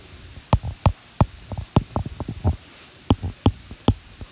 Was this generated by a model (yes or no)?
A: no